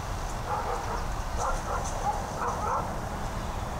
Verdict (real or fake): real